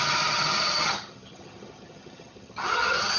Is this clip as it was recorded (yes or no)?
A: no